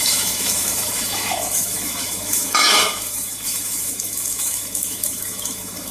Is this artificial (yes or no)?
yes